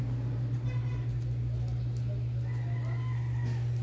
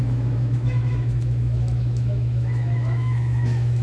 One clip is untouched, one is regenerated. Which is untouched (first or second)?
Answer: first